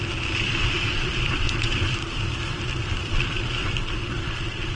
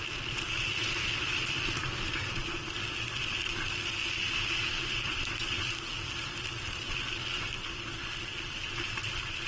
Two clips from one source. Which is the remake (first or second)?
first